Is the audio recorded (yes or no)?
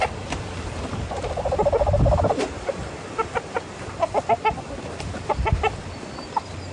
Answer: no